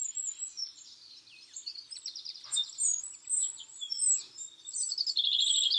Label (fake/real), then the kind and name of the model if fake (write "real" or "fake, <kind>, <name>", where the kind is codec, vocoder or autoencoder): real